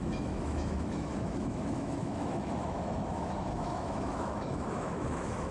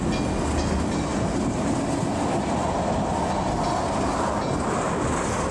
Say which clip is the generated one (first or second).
first